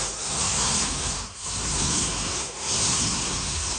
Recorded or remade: remade